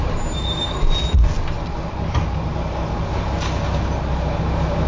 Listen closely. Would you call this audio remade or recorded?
recorded